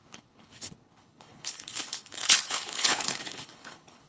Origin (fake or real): fake